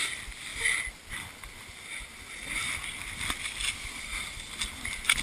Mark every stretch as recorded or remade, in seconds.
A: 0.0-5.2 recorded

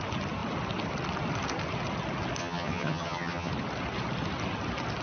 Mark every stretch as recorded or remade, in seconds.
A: 0.0-2.4 recorded; 2.4-3.5 remade; 3.5-5.0 recorded

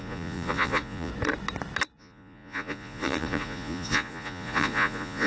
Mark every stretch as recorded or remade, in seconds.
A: 0.0-1.1 remade; 1.1-2.0 recorded; 2.0-5.3 remade